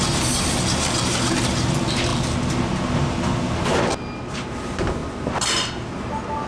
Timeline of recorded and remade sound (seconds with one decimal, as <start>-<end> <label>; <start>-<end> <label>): 0.0-6.5 recorded